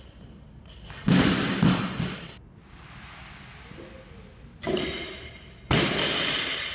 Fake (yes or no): no